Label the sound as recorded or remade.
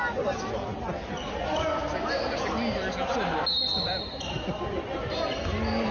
recorded